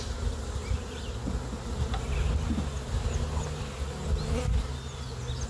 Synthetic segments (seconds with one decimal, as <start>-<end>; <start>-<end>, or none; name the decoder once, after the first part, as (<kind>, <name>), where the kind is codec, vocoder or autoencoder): none